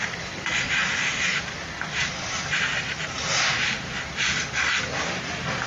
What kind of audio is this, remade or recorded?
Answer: remade